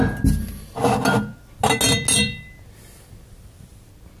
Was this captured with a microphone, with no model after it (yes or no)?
yes